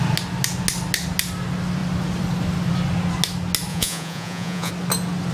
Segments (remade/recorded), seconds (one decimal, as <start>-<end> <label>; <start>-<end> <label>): 0.0-3.7 recorded; 3.7-4.7 remade; 4.7-5.3 recorded